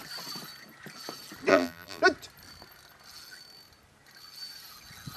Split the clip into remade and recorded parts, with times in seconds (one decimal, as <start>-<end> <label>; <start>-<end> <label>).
0.0-1.5 recorded; 1.5-2.0 remade; 2.0-5.2 recorded

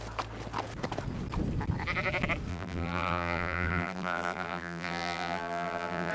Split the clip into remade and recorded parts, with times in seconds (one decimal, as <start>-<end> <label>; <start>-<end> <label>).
0.0-2.5 recorded; 2.5-6.1 remade

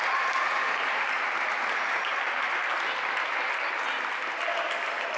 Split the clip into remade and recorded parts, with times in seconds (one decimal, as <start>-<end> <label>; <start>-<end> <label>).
0.0-5.2 recorded

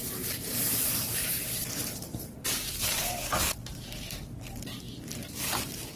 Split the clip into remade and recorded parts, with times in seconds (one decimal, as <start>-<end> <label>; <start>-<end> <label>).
0.0-3.3 remade; 3.3-6.0 recorded

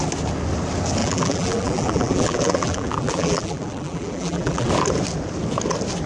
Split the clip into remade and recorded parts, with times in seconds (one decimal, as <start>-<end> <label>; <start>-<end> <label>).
0.0-1.0 recorded; 1.0-4.7 remade; 4.7-6.1 recorded

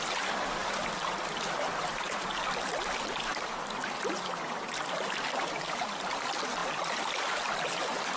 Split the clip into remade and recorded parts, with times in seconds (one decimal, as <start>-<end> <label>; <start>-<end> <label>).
0.0-0.6 recorded; 0.6-1.3 remade; 1.3-3.3 recorded; 3.3-4.5 remade; 4.5-6.6 recorded; 6.6-7.6 remade; 7.6-8.2 recorded

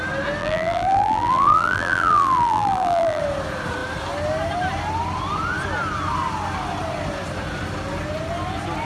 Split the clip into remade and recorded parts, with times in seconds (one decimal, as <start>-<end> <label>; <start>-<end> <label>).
0.0-0.4 recorded; 0.4-3.2 remade; 3.2-8.9 recorded

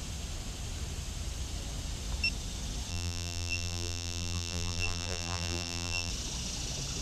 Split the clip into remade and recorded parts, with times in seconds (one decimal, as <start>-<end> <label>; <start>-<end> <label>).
0.0-2.9 recorded; 2.9-6.1 remade; 6.1-7.0 recorded